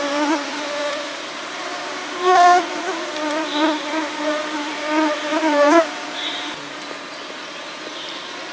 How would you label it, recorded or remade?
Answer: remade